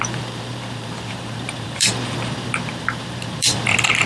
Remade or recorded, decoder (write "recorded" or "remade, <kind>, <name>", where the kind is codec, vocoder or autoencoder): remade, vocoder, BigVGAN v2